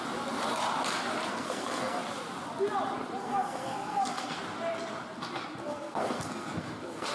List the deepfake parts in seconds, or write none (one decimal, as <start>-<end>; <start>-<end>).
1.3-2.0; 3.2-4.4; 5.6-7.1